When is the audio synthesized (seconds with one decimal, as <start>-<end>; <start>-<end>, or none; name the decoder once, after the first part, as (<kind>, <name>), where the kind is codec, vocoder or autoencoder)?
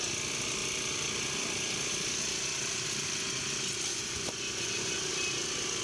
3.9-5.1 (vocoder, Vocos)